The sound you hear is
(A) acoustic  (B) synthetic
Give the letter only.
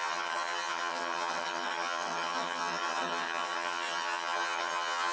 B